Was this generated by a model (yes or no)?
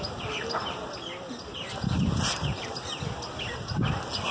no